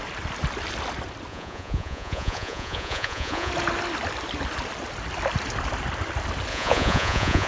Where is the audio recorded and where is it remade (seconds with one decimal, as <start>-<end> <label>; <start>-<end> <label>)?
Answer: 0.0-1.3 recorded; 1.3-3.5 remade; 3.5-6.5 recorded; 6.5-7.5 remade